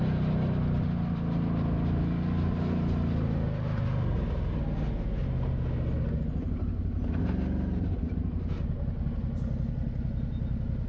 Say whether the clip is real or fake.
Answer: real